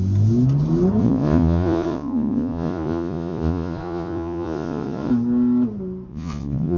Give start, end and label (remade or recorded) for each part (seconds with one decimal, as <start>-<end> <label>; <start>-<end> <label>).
0.0-1.0 recorded; 1.0-5.1 remade; 5.1-6.1 recorded; 6.1-6.8 remade